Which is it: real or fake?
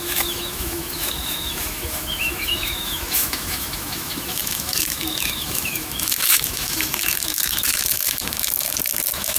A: fake